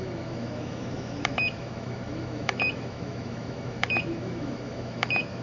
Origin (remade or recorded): remade